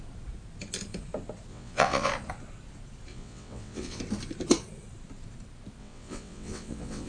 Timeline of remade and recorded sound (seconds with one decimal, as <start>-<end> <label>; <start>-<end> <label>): 0.0-1.5 recorded; 1.5-2.1 remade; 2.1-3.1 recorded; 3.1-4.0 remade; 4.0-5.8 recorded; 5.8-7.1 remade